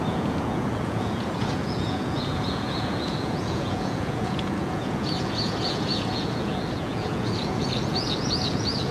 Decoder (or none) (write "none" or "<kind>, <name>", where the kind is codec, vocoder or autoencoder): vocoder, Vocos